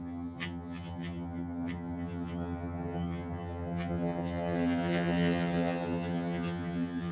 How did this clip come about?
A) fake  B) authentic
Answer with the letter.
A